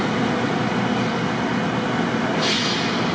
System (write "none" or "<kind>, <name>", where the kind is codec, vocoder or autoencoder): none